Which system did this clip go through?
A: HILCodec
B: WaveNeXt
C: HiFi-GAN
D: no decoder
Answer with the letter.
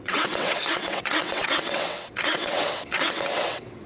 B